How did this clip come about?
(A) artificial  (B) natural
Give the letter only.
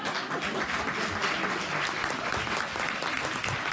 B